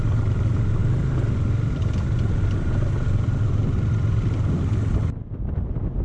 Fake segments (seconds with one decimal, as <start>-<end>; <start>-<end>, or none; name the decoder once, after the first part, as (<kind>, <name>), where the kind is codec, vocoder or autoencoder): none